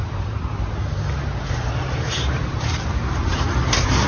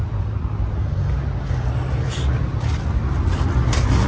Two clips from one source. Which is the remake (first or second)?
first